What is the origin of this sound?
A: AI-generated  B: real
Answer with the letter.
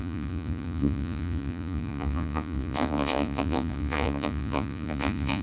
A